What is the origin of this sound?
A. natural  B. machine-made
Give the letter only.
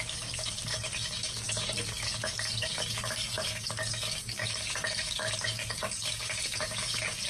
B